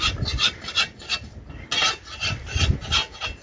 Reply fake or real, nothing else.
real